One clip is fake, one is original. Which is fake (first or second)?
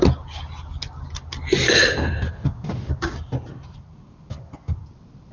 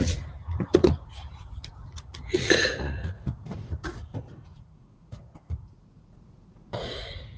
second